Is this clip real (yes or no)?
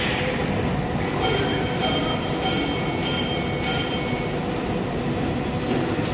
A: yes